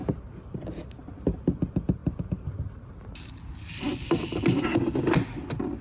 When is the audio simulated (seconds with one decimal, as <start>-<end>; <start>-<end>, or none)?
none